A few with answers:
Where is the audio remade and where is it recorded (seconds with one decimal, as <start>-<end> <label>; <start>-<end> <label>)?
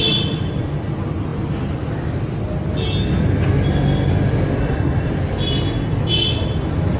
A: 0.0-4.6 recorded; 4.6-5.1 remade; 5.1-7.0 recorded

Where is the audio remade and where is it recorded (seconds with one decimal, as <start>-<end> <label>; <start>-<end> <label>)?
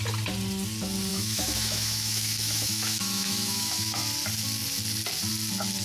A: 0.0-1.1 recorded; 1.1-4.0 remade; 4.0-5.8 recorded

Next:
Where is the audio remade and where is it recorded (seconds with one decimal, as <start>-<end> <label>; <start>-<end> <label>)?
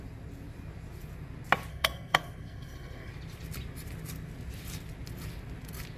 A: 0.0-1.7 recorded; 1.7-3.1 remade; 3.1-6.0 recorded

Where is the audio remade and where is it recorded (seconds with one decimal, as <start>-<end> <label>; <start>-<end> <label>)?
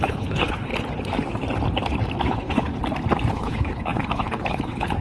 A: 0.0-0.7 remade; 0.7-2.3 recorded; 2.3-2.7 remade; 2.7-3.3 recorded; 3.3-5.0 remade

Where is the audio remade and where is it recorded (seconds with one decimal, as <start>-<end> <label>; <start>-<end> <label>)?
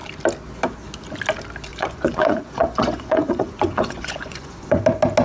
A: 0.0-1.7 recorded; 1.7-4.8 remade; 4.8-5.2 recorded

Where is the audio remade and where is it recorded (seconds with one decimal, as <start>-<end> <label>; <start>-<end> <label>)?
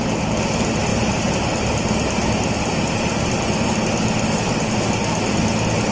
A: 0.0-5.9 recorded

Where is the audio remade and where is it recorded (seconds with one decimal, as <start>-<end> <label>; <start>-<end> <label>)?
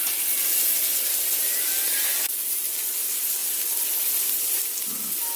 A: 0.0-5.4 recorded